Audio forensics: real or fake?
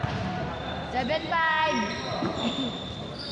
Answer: fake